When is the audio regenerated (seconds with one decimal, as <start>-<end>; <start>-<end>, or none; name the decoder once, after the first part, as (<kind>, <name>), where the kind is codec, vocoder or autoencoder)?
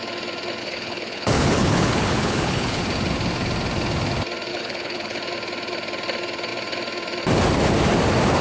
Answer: 0.6-2.8 (codec, HILCodec); 4.5-5.2